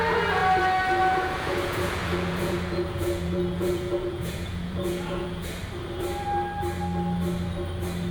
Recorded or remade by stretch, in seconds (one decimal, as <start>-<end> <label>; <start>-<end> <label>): 0.0-0.4 remade; 0.4-1.0 recorded; 1.0-5.6 remade; 5.6-8.1 recorded